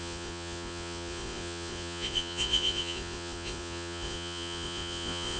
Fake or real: fake